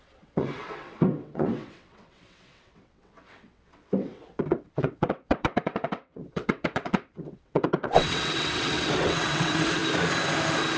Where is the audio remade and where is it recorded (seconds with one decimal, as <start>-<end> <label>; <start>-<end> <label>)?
0.0-9.8 remade; 9.8-10.8 recorded